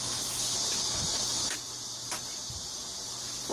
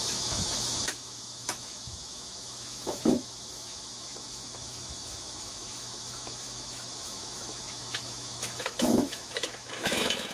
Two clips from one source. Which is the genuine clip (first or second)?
first